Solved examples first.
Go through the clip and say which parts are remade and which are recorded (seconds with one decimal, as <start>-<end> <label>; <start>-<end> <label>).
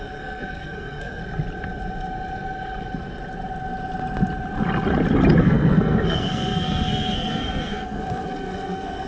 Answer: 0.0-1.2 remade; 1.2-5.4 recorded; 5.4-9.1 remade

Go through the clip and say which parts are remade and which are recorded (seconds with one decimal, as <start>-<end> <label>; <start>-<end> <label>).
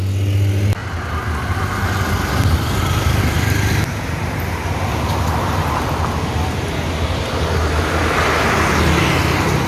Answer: 0.0-9.7 recorded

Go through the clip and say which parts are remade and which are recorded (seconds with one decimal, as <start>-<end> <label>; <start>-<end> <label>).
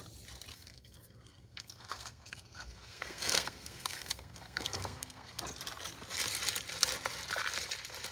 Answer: 0.0-0.5 recorded; 0.5-5.4 remade; 5.4-8.1 recorded